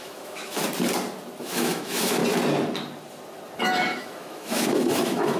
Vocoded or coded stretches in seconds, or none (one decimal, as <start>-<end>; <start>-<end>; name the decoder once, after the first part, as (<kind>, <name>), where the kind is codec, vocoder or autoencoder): 0.0-0.6 (autoencoder, DAC-VAE); 1.4-2.2; 3.6-5.4